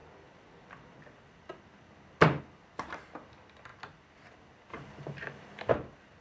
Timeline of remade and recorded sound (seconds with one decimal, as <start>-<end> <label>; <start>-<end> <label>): 0.0-4.7 recorded; 4.7-5.7 remade; 5.7-6.2 recorded